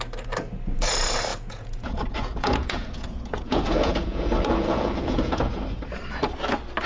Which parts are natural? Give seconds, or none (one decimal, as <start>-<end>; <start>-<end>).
0.0-1.3; 5.4-6.9